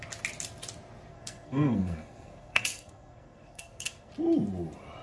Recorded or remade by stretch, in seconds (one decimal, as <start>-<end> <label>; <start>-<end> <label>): 0.0-1.1 recorded; 1.1-4.1 remade; 4.1-5.0 recorded